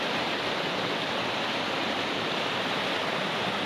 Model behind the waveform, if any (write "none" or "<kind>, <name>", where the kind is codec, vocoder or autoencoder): vocoder, BigVGAN v2